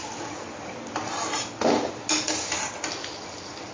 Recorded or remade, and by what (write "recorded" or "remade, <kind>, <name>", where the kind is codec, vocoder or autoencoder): recorded